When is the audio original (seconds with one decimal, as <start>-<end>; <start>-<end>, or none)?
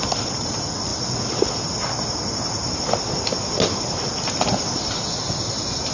0.0-5.9